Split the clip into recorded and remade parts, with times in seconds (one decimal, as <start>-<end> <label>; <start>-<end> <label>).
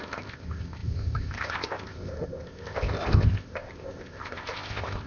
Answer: 0.0-5.1 remade